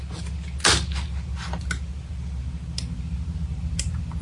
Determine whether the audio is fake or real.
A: real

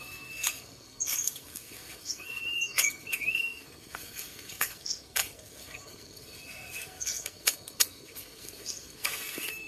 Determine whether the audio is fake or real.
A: fake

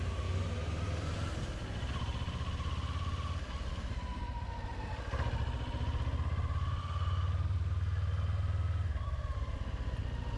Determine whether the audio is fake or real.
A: real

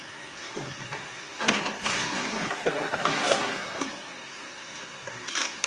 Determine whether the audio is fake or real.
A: fake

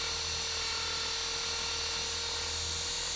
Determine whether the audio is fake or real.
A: real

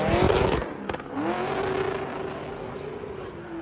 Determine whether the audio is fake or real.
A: real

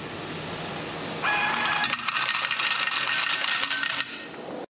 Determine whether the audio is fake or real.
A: real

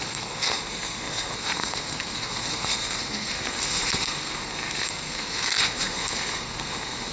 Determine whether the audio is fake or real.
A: fake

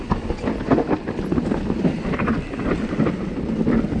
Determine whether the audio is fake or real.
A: real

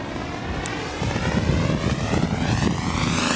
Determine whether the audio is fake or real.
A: real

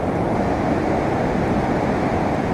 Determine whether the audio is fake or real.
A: real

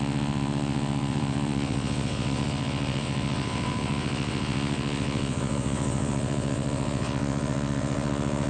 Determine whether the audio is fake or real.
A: fake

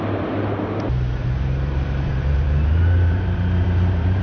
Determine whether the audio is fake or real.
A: fake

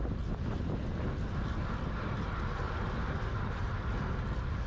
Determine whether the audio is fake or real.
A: real